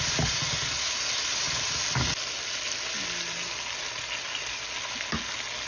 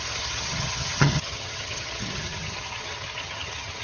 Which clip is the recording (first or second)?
first